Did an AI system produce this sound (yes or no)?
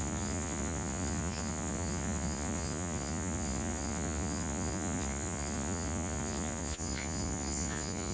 yes